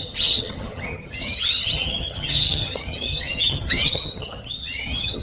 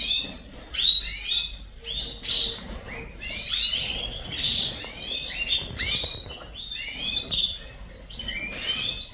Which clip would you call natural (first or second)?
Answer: second